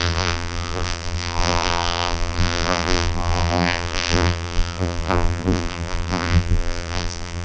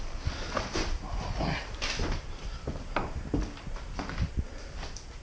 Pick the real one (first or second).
second